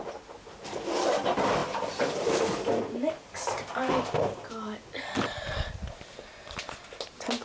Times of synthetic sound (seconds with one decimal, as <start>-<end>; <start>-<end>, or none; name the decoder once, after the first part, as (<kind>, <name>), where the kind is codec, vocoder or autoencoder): none